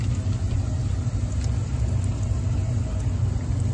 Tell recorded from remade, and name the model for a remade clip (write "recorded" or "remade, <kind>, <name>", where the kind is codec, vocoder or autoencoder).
recorded